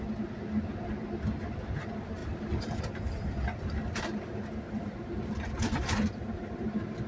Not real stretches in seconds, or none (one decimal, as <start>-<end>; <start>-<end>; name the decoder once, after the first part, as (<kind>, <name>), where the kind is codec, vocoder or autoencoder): none